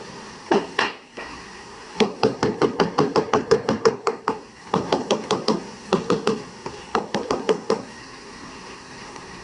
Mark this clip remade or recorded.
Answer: remade